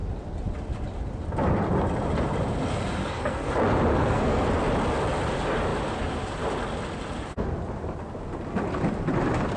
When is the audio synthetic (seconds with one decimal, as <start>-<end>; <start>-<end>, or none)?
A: 3.0-3.5; 3.9-4.5